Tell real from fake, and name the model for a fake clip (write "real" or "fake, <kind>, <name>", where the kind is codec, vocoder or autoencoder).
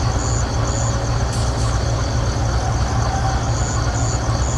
real